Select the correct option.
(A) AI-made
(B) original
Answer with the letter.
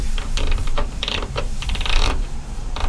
A